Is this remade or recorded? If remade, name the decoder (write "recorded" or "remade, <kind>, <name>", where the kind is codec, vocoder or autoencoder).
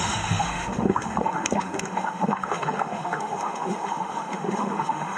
remade, autoencoder, DAC-VAE